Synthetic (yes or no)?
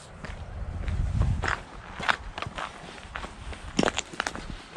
no